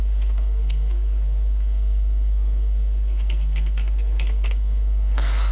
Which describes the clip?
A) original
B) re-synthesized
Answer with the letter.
B